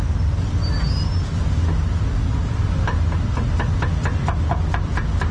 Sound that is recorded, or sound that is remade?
recorded